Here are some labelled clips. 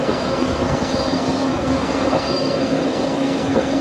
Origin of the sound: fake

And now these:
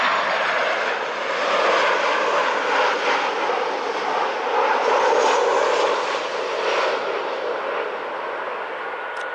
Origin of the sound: real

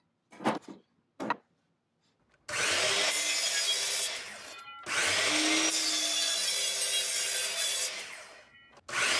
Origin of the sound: real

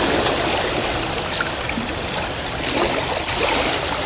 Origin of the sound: real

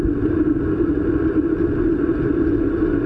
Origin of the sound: real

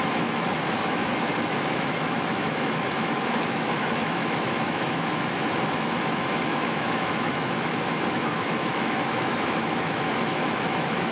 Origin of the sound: fake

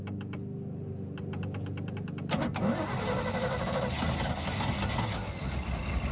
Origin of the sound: real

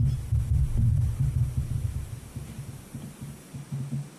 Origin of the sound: real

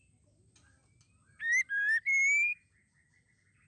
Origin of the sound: real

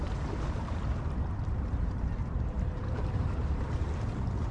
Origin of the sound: fake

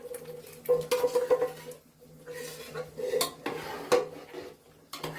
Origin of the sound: real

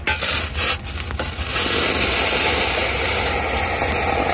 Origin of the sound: real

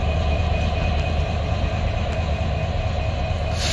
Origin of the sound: real